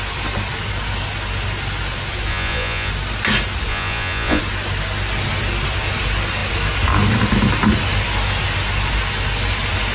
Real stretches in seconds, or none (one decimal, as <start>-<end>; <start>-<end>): 0.0-2.3; 2.9-3.7; 4.4-9.9